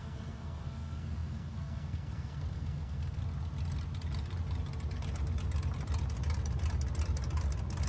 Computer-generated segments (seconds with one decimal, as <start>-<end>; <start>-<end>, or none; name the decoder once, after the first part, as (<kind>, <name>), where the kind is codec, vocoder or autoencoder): 0.0-3.2 (codec, SNAC)